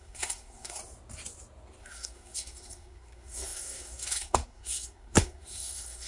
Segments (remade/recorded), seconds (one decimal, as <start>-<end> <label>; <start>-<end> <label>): 0.0-0.8 remade; 0.8-1.8 recorded; 1.8-6.1 remade